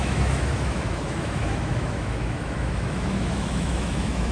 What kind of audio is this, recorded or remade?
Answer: remade